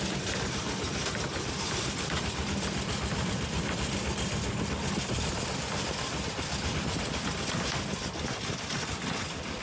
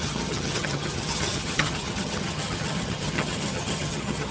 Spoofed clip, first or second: second